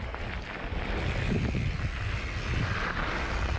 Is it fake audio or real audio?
real